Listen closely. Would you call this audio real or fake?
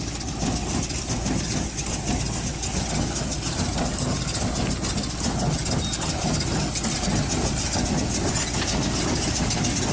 real